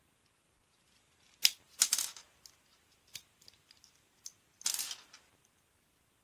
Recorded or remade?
recorded